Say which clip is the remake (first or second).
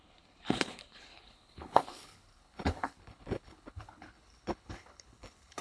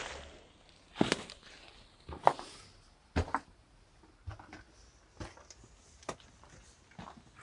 first